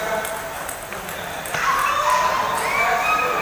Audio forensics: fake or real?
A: real